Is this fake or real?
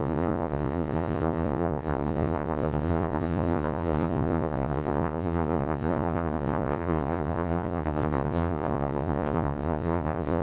fake